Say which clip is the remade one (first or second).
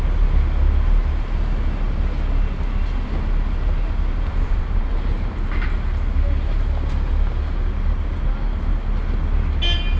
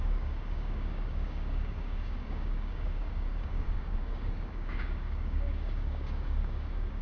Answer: second